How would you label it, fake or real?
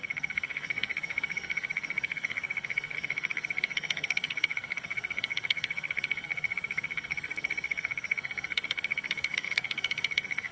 fake